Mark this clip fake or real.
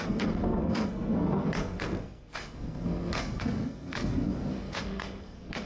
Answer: fake